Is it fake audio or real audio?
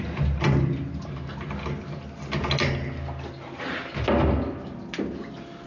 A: real